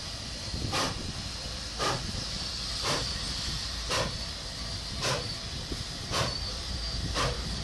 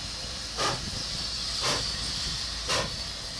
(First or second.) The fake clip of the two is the first